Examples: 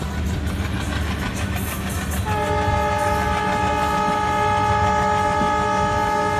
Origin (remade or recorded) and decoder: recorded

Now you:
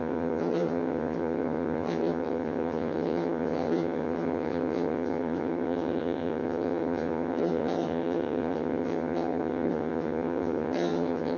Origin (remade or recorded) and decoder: remade, vocoder, HiFi-GAN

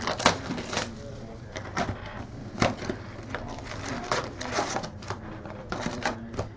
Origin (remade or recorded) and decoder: remade, vocoder, BigVGAN v2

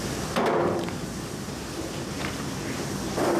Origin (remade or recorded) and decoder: recorded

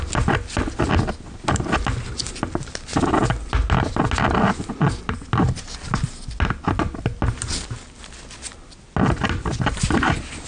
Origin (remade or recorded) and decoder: recorded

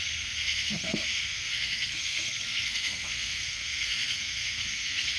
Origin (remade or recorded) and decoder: remade, codec, SNAC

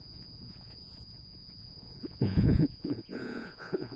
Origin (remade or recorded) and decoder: remade, vocoder, Vocos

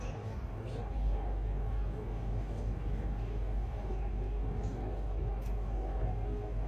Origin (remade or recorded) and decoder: remade, codec, DAC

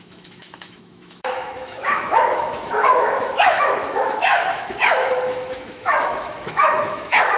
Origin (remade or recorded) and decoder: remade, autoencoder, DAC-VAE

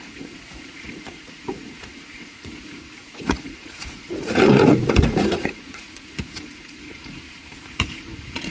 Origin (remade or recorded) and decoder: remade, vocoder, Vocos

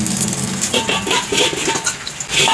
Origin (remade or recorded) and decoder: recorded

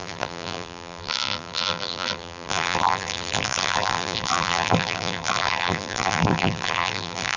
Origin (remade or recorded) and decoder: remade, vocoder, BigVGAN v2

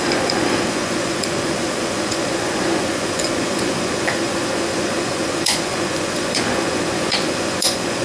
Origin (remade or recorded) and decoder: remade, vocoder, Vocos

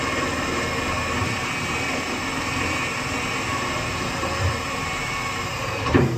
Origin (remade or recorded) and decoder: remade, vocoder, BigVGAN v2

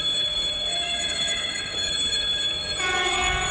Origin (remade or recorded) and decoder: remade, codec, DAC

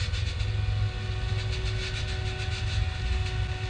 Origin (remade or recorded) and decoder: recorded